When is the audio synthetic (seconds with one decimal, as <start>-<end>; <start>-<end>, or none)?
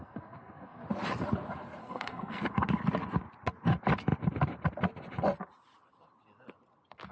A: 0.0-0.8; 1.8-2.4